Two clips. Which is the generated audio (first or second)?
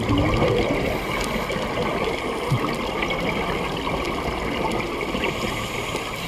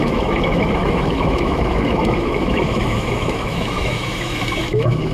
second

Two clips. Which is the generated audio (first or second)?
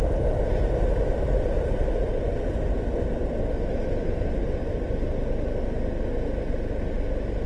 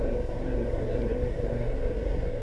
second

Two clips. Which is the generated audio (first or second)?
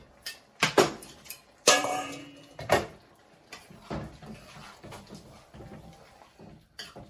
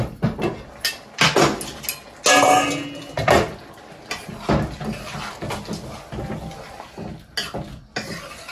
first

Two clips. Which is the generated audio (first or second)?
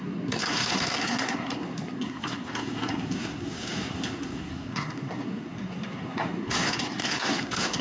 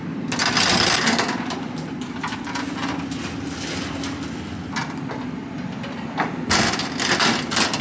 first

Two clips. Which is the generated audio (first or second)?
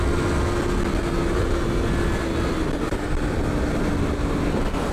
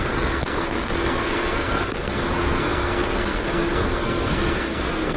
second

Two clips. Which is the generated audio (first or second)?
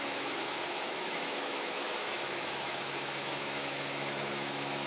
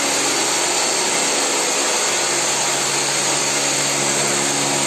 first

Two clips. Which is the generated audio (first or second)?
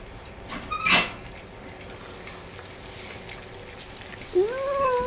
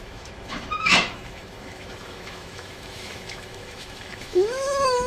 second